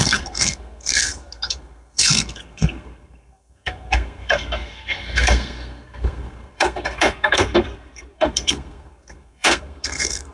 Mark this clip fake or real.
fake